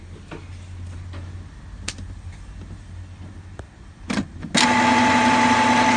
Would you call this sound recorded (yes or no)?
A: yes